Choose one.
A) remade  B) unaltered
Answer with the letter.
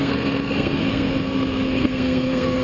A